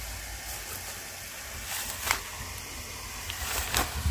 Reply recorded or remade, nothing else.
recorded